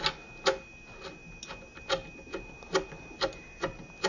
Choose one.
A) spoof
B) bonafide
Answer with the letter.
B